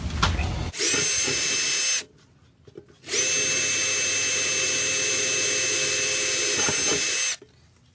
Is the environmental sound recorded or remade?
recorded